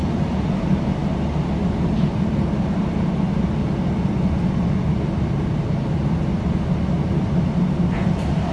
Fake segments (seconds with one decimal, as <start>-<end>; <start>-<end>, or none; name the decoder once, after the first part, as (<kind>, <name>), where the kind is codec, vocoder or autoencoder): none